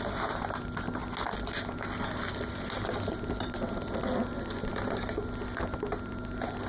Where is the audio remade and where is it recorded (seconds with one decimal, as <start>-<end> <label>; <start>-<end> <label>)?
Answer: 0.0-6.7 recorded